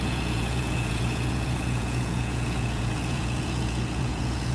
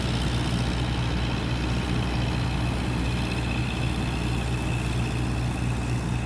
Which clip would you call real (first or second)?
second